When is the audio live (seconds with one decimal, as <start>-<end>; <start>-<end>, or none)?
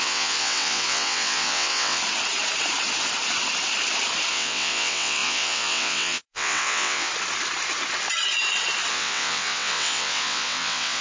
2.0-4.3; 7.1-8.9